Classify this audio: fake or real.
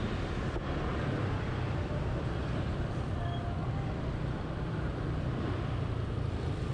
fake